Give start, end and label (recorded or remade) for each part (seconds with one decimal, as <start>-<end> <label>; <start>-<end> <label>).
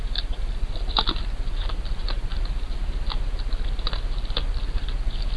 0.0-5.4 recorded